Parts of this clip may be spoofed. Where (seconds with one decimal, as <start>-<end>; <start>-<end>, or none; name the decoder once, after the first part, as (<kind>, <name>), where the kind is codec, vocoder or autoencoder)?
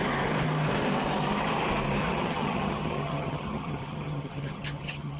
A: 2.0-5.2 (vocoder, HiFi-GAN)